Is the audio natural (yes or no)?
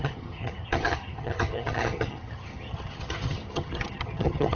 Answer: no